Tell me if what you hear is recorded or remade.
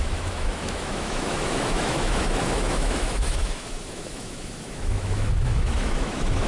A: remade